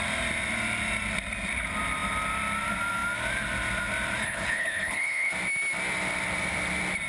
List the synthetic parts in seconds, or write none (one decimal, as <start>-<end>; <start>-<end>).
4.2-5.3